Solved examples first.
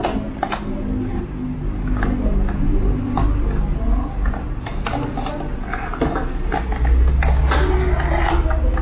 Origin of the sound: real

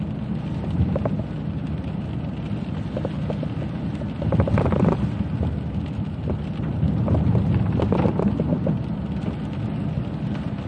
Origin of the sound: real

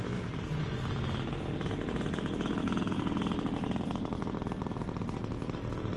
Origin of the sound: real